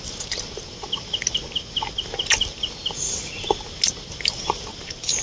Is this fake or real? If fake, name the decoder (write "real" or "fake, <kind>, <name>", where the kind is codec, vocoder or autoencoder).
real